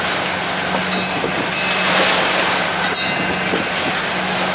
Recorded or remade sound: recorded